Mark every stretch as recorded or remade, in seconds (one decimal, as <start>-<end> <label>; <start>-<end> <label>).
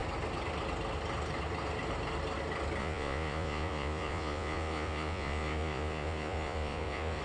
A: 0.0-2.8 recorded; 2.8-7.2 remade